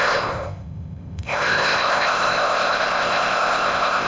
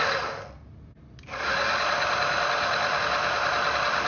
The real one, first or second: second